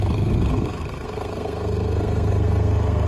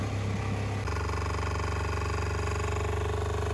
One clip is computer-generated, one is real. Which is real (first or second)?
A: second